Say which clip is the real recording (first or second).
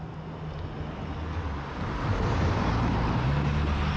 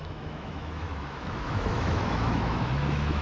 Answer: first